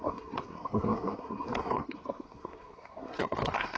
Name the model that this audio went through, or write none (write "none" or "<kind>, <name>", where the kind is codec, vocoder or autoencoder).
codec, SNAC